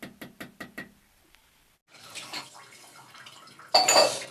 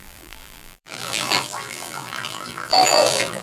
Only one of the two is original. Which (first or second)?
first